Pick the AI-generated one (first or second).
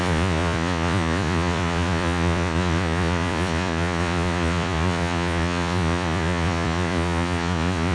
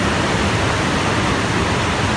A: first